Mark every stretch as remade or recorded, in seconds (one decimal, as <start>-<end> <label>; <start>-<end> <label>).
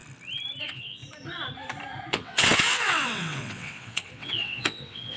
0.0-0.6 recorded; 0.6-1.0 remade; 1.0-2.1 recorded; 2.1-5.2 remade